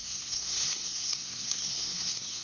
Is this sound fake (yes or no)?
yes